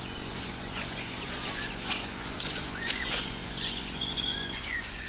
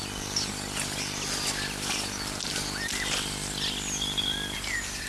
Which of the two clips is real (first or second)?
second